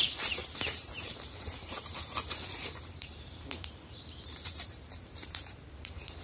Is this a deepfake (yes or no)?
yes